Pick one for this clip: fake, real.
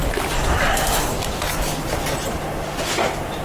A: real